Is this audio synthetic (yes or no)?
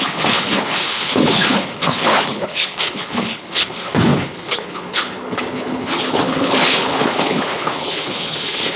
yes